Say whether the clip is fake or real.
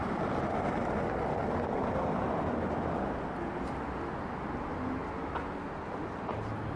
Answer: real